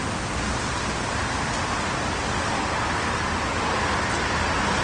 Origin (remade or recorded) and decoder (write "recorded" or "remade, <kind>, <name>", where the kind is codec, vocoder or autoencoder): recorded